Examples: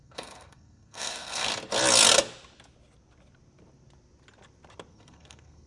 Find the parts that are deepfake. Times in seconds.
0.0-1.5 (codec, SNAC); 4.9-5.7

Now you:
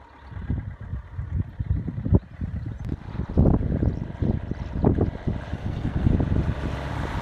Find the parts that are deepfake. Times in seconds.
5.5-6.1 (codec, SNAC)

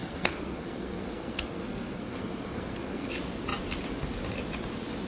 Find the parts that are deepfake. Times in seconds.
0.0-3.1 (codec, SNAC)

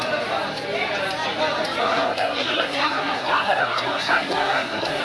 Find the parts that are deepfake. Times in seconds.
1.8-5.0 (codec, SNAC)

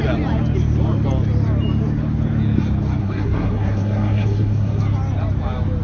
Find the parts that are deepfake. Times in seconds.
3.0-4.8 (codec, SNAC)

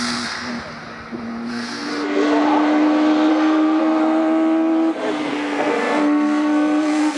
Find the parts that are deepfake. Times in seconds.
0.0-0.5 (codec, SNAC); 1.5-1.9; 3.3-3.8; 5.3-7.2

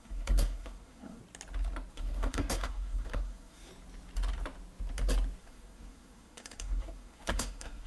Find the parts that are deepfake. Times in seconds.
0.0-1.2 (codec, SNAC); 1.9-3.7; 5.4-7.9